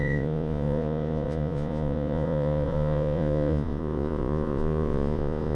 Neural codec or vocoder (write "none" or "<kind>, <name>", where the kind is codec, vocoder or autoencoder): vocoder, Vocos